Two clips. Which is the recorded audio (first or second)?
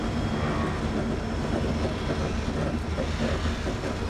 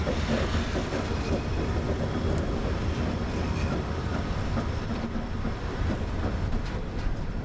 first